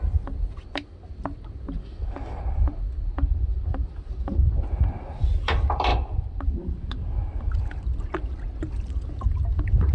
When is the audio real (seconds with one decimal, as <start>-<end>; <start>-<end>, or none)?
0.0-1.8; 2.4-9.9